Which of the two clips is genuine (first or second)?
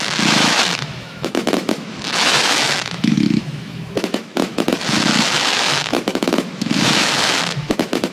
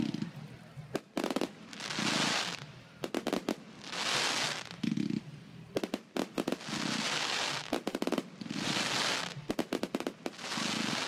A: second